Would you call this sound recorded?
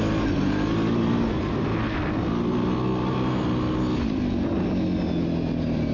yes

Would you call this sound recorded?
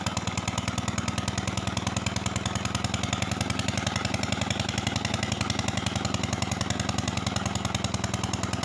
yes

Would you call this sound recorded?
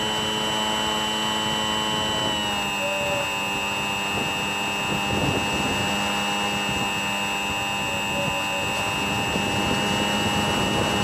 yes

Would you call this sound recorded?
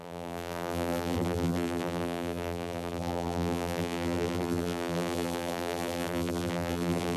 no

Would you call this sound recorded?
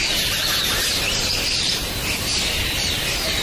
yes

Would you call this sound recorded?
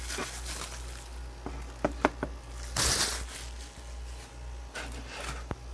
yes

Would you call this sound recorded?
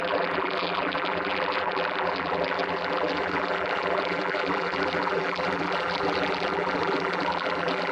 no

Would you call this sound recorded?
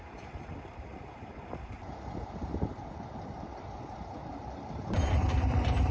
no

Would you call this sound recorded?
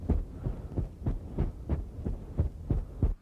yes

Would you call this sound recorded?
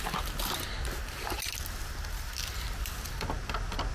yes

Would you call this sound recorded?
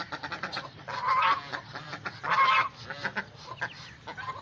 yes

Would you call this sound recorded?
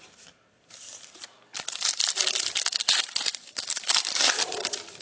no